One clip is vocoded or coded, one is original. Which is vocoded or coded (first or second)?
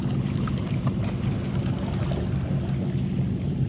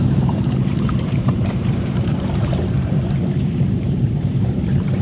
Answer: second